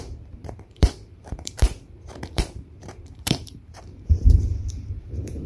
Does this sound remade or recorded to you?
remade